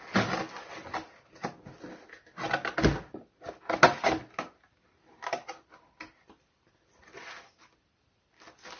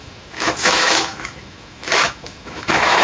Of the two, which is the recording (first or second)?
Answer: first